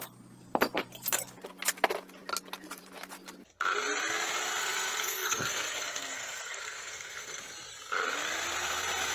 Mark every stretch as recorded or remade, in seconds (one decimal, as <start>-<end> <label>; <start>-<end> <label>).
0.0-4.6 recorded; 4.6-7.4 remade; 7.4-9.1 recorded